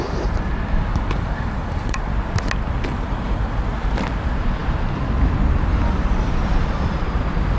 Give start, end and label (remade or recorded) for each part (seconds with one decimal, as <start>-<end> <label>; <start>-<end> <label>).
0.0-0.9 recorded; 0.9-2.1 remade; 2.1-2.9 recorded; 2.9-3.5 remade; 3.5-7.6 recorded